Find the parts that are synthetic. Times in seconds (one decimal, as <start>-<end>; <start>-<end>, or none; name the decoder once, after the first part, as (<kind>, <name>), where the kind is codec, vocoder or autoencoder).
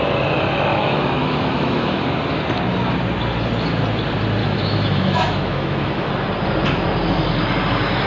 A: 0.7-2.2 (autoencoder, DAC-VAE); 4.4-6.1